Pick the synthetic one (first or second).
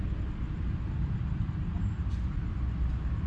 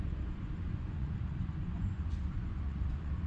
second